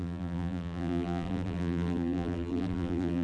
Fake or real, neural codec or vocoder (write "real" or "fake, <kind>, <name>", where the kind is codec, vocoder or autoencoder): fake, vocoder, BigVGAN v2